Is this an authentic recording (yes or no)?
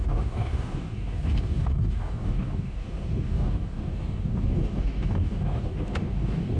no